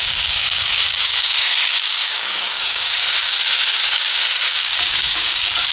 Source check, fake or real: fake